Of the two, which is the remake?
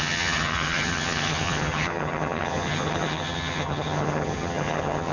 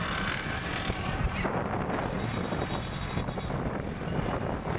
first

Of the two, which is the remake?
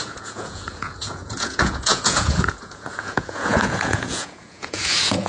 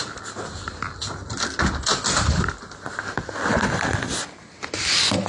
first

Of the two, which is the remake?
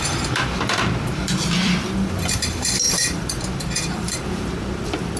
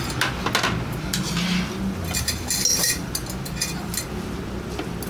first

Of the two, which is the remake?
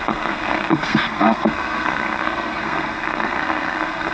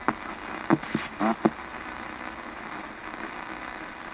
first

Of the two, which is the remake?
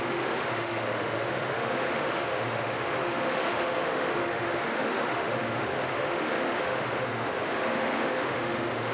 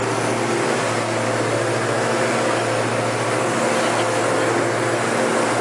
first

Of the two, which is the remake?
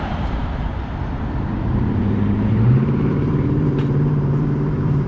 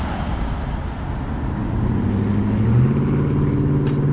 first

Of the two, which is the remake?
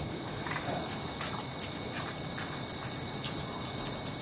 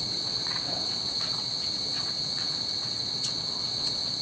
second